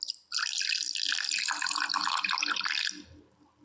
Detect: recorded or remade recorded